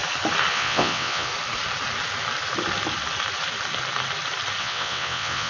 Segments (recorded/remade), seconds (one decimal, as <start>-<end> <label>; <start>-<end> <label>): 0.0-0.5 recorded; 0.5-1.3 remade; 1.3-4.6 recorded; 4.6-5.5 remade